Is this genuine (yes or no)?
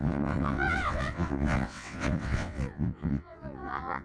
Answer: no